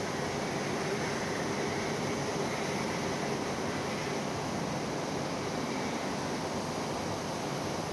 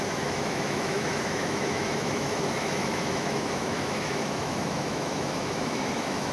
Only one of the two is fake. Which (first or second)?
second